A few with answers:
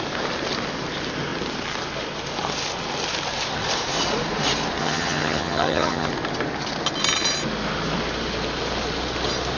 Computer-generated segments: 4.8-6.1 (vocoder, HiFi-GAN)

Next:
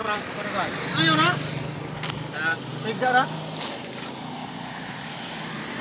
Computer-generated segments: none

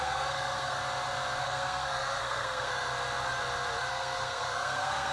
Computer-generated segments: 0.0-0.8 (codec, SNAC); 1.4-2.9; 3.9-5.1

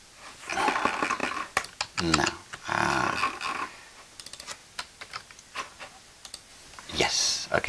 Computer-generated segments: 6.5-7.0 (vocoder, BigVGAN v2)

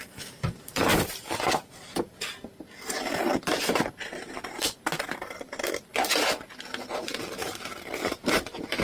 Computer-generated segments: 0.0-5.9 (vocoder, BigVGAN v2); 7.0-8.8

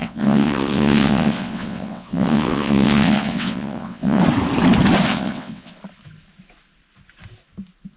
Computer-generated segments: 0.0-4.2 (vocoder, WaveNeXt); 5.1-5.7